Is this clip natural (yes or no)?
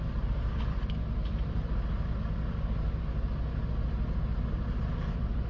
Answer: yes